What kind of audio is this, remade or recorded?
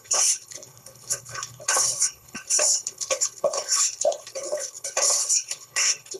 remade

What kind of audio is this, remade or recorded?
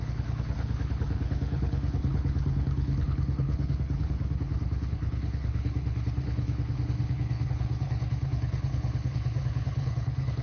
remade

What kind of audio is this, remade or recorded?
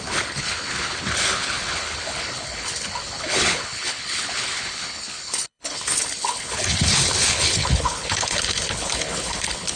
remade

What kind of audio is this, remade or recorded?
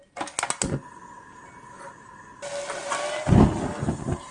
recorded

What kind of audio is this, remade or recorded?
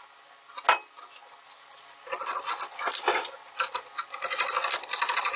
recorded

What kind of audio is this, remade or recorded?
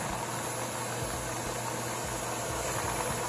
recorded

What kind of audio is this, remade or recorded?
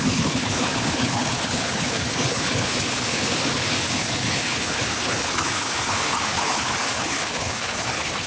remade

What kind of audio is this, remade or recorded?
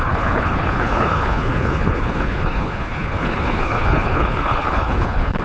remade